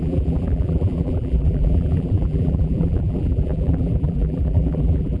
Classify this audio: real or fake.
fake